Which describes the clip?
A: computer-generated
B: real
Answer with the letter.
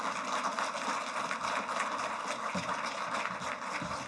B